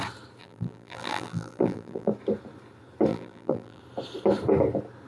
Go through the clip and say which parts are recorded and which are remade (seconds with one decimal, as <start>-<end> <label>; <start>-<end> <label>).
0.0-0.4 recorded; 0.4-2.1 remade; 2.1-3.1 recorded; 3.1-3.8 remade; 3.8-5.1 recorded